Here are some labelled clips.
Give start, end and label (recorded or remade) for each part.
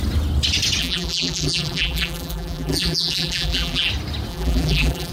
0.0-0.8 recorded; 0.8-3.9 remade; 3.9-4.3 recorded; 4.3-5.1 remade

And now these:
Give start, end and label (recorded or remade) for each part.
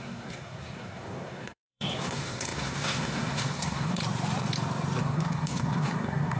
0.0-4.0 remade; 4.0-5.0 recorded; 5.0-6.4 remade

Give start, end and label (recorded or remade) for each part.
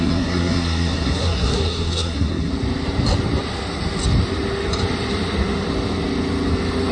0.0-2.5 remade; 2.5-6.9 recorded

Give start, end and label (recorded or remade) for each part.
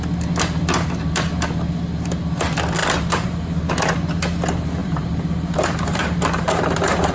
0.0-2.8 recorded; 2.8-3.7 remade; 3.7-4.8 recorded; 4.8-7.1 remade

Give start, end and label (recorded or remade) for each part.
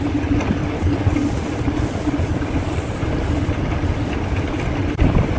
0.0-5.4 recorded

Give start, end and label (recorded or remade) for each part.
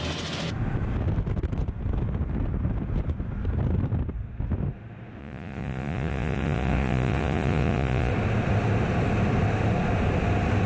0.0-5.2 recorded; 5.2-8.1 remade; 8.1-10.7 recorded